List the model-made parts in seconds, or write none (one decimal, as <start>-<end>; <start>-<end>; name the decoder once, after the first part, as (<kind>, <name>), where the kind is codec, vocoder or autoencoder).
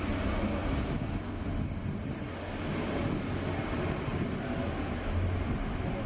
none